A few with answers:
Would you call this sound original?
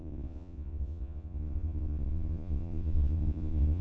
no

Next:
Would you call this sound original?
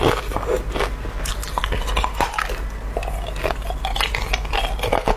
yes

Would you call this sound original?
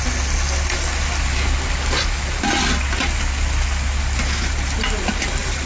yes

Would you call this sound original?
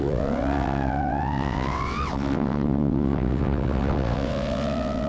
no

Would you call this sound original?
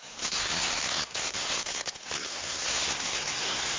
no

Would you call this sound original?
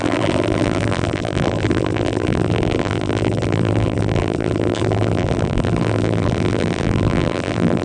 no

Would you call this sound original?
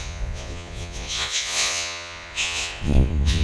no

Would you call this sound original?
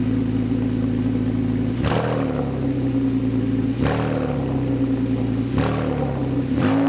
yes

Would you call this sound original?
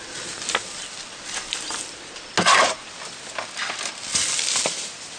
yes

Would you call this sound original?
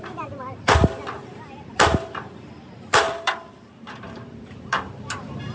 no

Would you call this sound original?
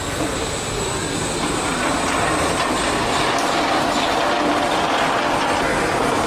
yes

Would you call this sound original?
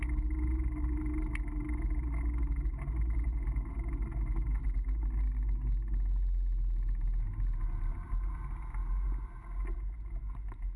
yes